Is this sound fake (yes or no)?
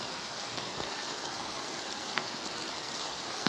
yes